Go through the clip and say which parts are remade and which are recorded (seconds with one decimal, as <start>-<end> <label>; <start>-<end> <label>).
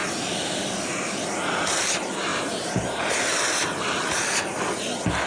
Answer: 0.0-1.8 remade; 1.8-2.3 recorded; 2.3-4.2 remade; 4.2-5.3 recorded